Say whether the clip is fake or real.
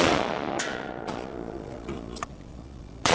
fake